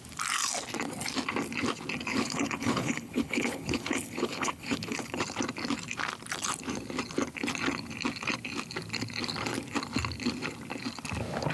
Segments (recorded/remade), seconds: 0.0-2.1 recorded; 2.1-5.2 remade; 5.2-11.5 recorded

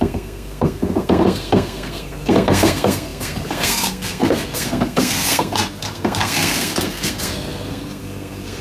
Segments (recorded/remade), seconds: 0.0-8.6 remade

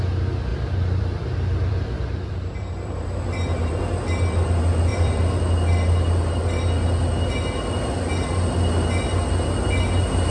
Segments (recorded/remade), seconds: 0.0-0.5 recorded; 0.5-3.8 remade; 3.8-4.9 recorded; 4.9-5.4 remade; 5.4-10.3 recorded

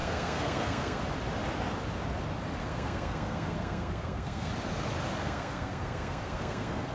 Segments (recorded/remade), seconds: 0.0-1.0 remade; 1.0-2.6 recorded; 2.6-4.5 remade; 4.5-5.2 recorded; 5.2-6.9 remade

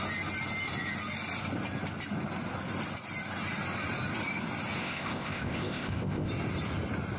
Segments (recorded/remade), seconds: 0.0-4.8 recorded; 4.8-6.3 remade; 6.3-7.2 recorded